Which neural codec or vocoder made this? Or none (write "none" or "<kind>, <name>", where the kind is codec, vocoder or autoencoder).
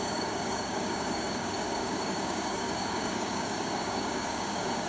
codec, DAC